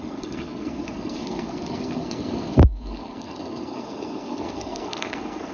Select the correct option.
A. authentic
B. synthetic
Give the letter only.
B